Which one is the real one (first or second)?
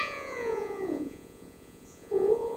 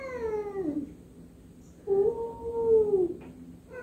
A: second